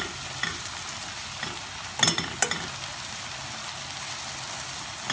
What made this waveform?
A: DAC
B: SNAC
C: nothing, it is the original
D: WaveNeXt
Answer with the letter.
C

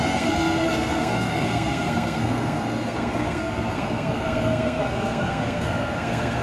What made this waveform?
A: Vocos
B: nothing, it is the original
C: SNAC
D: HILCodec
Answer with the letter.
C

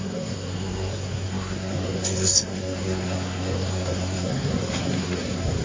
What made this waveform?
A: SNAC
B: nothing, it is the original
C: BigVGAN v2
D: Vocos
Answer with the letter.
A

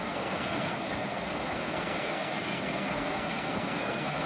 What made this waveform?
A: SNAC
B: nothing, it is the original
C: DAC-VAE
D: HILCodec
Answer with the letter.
A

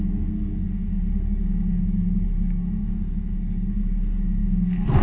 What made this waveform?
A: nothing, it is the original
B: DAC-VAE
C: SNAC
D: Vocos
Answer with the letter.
C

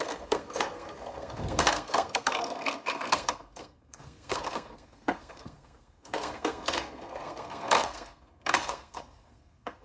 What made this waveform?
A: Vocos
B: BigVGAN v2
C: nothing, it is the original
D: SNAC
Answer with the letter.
D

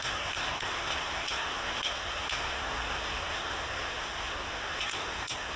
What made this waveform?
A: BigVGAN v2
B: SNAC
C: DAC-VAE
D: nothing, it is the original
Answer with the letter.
B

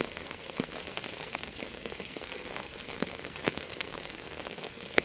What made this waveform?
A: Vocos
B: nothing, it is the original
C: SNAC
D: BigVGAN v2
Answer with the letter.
C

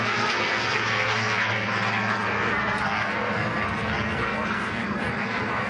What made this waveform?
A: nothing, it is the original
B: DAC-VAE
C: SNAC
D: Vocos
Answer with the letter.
C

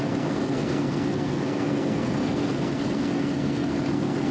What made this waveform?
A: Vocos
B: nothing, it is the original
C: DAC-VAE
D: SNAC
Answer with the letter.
D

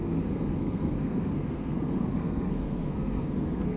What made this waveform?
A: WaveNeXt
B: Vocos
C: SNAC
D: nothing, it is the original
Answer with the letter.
C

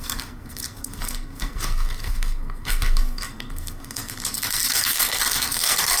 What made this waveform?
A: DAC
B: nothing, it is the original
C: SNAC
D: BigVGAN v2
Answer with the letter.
C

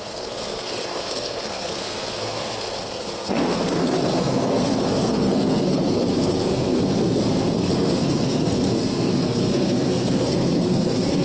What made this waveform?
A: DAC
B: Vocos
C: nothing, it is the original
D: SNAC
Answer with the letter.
D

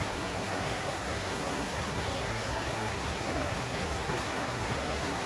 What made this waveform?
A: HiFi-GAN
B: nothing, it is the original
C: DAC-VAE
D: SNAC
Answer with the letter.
D